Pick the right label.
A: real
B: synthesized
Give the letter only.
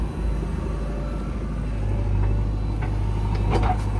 A